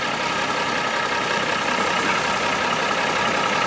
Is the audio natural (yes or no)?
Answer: yes